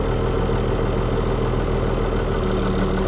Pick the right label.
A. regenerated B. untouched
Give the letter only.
B